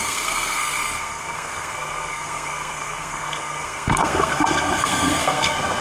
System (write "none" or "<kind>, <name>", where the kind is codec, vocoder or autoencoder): codec, SNAC